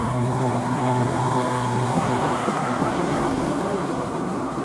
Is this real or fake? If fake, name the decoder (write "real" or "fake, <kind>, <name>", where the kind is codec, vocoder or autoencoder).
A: fake, codec, SNAC